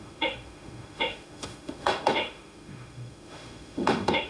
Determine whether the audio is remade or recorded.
remade